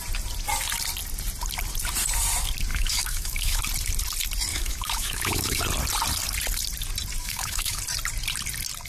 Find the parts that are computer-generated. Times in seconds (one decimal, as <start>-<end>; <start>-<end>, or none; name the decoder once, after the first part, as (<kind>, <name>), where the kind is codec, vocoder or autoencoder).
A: 2.7-3.6 (autoencoder, DAC-VAE); 4.5-5.6; 7.2-7.8

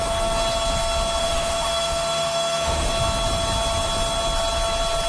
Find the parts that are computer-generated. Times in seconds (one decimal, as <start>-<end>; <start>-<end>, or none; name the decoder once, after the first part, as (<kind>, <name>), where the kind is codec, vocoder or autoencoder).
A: 1.2-2.9 (autoencoder, DAC-VAE)

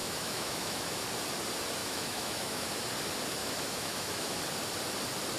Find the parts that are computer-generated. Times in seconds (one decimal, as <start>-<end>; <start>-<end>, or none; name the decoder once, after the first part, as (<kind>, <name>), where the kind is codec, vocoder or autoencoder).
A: 0.0-1.0 (autoencoder, DAC-VAE); 1.8-2.7; 3.4-4.4

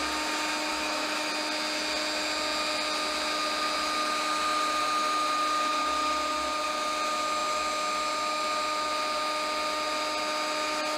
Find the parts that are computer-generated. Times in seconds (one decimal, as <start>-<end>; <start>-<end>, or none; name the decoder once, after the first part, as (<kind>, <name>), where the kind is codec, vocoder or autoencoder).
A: 0.7-1.3 (autoencoder, DAC-VAE)

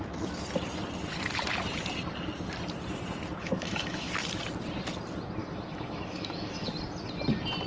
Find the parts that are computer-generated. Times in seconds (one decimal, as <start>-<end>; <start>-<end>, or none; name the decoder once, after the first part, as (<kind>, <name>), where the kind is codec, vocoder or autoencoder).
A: 3.4-4.1 (autoencoder, DAC-VAE); 5.4-6.7

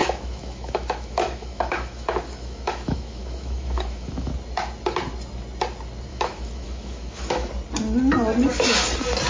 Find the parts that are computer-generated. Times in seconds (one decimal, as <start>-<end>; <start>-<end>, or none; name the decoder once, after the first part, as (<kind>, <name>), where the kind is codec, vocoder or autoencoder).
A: 0.0-4.3 (autoencoder, DAC-VAE); 6.1-7.5

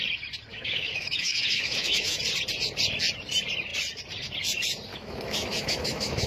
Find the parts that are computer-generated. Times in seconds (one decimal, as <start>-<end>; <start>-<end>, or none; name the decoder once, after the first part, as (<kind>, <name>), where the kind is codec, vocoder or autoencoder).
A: 0.5-2.2 (autoencoder, DAC-VAE); 4.9-6.3

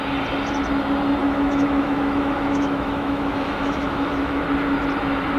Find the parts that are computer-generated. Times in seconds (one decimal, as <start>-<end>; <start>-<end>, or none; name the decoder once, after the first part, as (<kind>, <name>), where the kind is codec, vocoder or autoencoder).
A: 1.2-4.4 (autoencoder, DAC-VAE)